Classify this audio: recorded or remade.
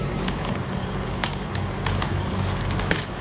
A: remade